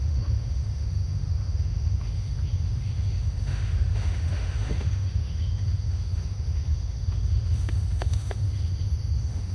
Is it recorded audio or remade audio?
remade